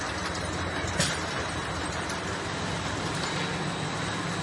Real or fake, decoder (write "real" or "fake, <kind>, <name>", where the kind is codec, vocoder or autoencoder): real